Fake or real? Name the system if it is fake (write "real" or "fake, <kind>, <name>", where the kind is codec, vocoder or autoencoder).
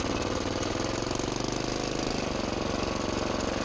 real